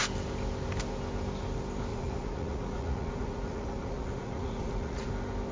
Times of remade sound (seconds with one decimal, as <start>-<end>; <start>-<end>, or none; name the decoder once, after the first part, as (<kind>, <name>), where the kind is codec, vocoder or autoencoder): 1.9-5.1 (vocoder, Vocos)

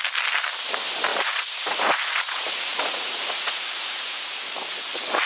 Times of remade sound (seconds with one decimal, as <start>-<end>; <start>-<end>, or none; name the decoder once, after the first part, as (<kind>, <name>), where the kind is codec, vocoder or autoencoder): 1.1-4.3 (vocoder, Vocos)

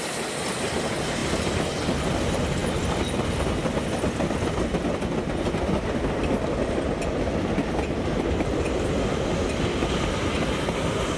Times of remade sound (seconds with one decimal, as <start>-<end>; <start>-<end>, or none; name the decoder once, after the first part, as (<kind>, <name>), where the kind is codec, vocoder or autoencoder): none

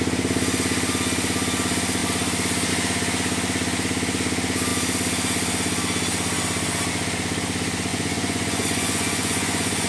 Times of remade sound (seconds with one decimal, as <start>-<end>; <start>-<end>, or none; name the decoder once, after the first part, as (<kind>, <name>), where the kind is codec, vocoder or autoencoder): 7.9-9.9 (vocoder, Vocos)

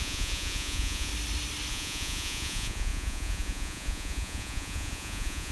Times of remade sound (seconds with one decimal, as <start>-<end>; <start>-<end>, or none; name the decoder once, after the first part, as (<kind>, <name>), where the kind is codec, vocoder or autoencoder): 0.0-1.1 (vocoder, Vocos); 1.7-5.5